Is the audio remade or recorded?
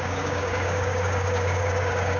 remade